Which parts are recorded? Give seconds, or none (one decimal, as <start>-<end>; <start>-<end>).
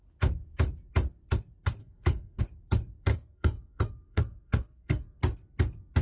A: 0.0-1.8; 2.4-3.1; 5.2-6.0